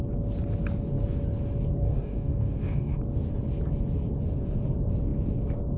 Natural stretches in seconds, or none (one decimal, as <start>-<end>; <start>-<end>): 0.0-1.8; 3.0-5.8